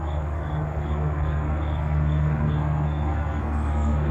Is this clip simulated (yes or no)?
yes